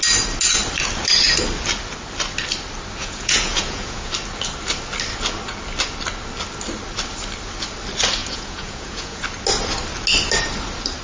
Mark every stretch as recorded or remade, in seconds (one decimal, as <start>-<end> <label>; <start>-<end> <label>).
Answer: 0.0-3.0 recorded; 3.0-4.1 remade; 4.1-8.2 recorded; 8.2-9.2 remade; 9.2-11.0 recorded